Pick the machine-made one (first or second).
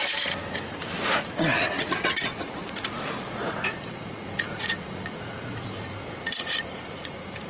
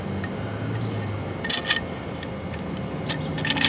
first